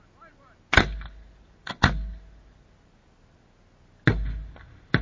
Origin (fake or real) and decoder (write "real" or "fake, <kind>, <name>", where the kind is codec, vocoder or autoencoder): real